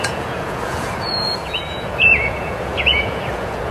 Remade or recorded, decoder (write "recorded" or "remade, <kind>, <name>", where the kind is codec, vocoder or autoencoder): remade, vocoder, Vocos